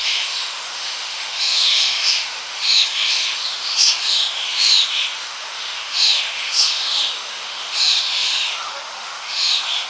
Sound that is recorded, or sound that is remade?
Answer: remade